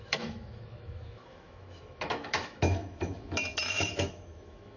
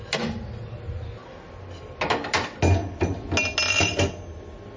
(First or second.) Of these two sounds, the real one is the second